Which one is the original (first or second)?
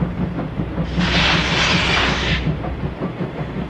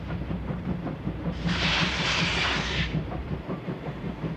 first